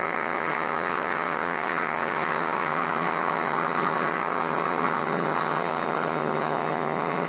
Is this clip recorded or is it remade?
remade